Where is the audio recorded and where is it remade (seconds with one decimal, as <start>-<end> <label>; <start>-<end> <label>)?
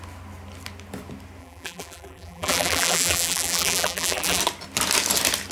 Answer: 0.0-1.4 recorded; 1.4-4.4 remade; 4.4-5.5 recorded